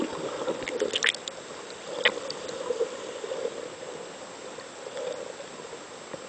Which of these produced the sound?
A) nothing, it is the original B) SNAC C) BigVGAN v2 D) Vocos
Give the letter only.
A